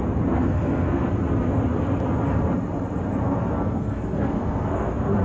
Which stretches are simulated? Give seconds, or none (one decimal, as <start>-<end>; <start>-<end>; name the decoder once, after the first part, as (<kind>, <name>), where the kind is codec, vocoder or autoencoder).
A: 0.5-1.1 (codec, SNAC); 3.3-5.2